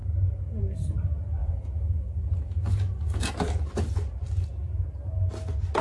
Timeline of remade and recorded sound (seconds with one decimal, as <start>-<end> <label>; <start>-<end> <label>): 0.0-1.4 recorded; 1.4-3.3 remade; 3.3-5.8 recorded